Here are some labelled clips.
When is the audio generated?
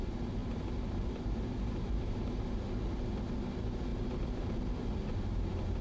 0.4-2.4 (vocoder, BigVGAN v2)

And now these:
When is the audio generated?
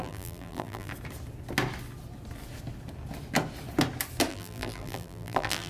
0.0-0.9 (vocoder, BigVGAN v2); 4.3-5.7